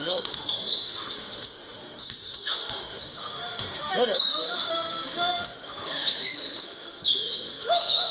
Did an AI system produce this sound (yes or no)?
yes